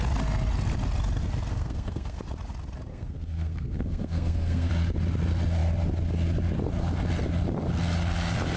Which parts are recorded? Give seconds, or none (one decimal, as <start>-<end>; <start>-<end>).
0.0-1.5; 2.2-2.9; 4.7-8.6